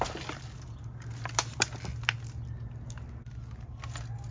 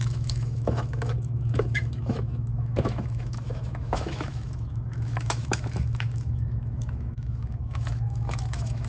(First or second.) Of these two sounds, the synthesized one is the second